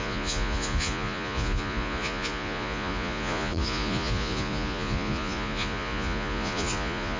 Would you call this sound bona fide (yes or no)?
no